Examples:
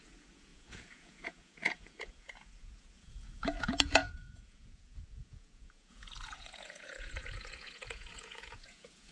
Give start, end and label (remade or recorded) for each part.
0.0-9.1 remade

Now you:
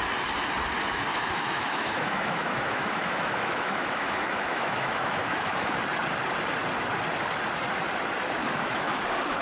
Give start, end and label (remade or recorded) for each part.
0.0-1.1 recorded; 1.1-5.8 remade; 5.8-8.4 recorded; 8.4-9.0 remade; 9.0-9.4 recorded